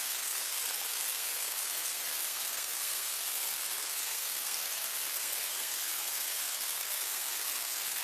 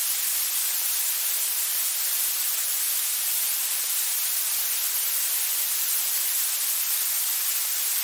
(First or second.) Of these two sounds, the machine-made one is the first